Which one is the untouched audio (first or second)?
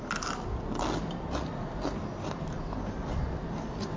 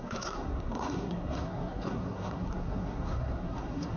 first